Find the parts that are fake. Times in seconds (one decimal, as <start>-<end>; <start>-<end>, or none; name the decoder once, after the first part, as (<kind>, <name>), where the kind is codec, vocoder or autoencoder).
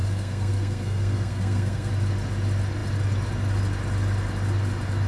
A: 0.0-1.9 (codec, SNAC)